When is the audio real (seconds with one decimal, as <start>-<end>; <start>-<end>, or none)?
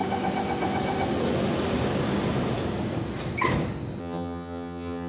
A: 0.0-4.0